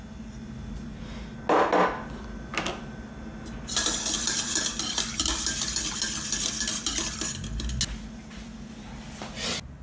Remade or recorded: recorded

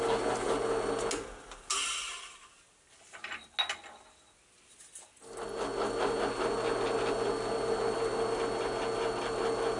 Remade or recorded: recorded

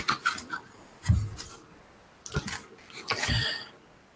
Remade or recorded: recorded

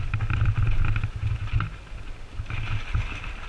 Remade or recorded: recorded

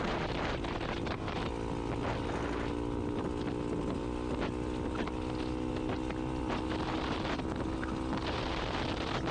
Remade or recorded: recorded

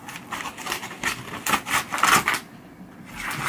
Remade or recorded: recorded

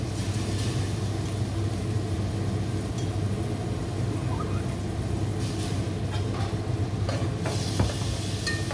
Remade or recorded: recorded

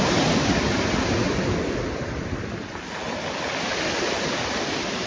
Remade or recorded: recorded